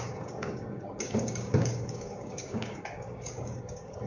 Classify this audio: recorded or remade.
remade